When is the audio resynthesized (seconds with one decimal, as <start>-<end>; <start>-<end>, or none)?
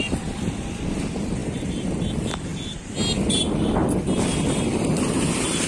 0.0-2.5; 3.4-3.8; 5.1-5.7